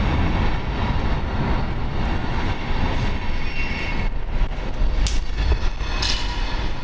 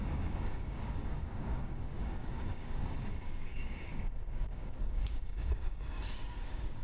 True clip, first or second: first